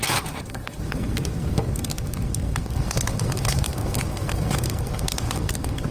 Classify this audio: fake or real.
fake